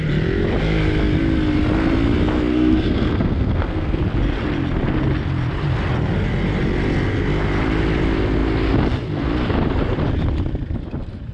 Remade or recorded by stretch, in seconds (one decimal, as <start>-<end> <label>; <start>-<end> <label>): 0.0-2.5 recorded; 2.5-4.0 remade; 4.0-11.3 recorded